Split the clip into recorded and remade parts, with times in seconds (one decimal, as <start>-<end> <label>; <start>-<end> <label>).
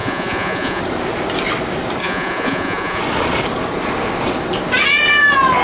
0.0-0.8 remade; 0.8-2.0 recorded; 2.0-3.0 remade; 3.0-5.6 recorded